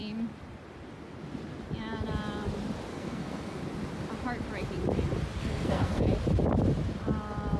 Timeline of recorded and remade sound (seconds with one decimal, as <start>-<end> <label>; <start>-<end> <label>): 0.0-2.9 recorded; 2.9-3.6 remade; 3.6-5.4 recorded; 5.4-6.0 remade; 6.0-7.6 recorded